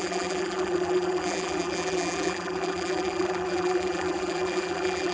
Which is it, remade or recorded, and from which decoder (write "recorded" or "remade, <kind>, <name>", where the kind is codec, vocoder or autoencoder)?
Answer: remade, vocoder, BigVGAN v2